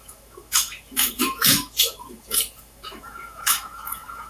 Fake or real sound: fake